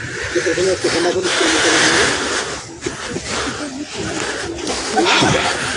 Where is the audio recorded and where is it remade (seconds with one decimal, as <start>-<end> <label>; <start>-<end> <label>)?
0.0-5.8 recorded